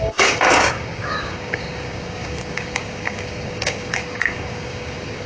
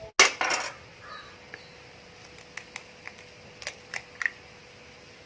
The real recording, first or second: second